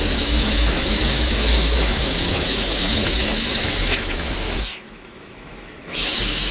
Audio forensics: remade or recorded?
remade